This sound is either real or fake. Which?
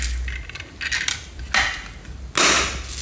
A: real